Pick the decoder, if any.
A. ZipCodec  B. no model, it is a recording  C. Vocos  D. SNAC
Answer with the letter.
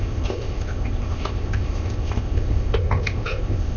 A